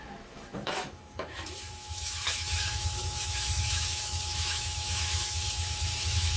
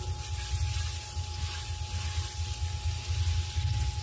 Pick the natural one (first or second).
second